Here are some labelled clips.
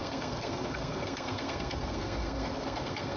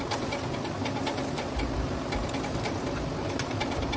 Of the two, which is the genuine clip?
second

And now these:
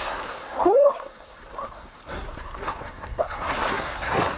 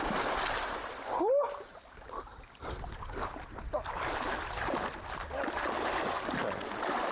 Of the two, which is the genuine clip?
second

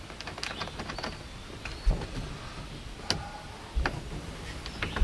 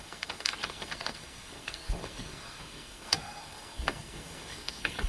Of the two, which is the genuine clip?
first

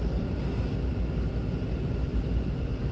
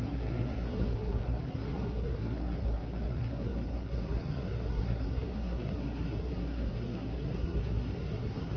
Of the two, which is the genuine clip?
first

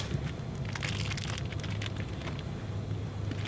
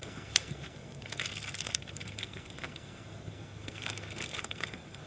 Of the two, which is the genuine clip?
first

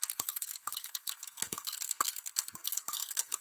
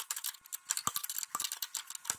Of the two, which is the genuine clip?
second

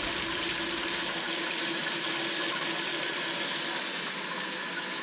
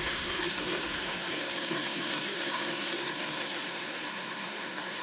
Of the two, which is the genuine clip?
first